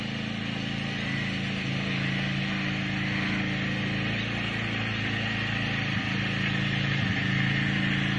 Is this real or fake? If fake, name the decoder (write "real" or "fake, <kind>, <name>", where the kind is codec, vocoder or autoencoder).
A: real